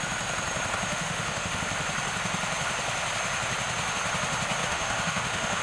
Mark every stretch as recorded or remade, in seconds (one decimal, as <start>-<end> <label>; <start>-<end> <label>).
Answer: 0.0-0.9 recorded; 0.9-1.6 remade; 1.6-4.6 recorded; 4.6-5.6 remade